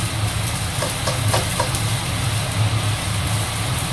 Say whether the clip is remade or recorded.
recorded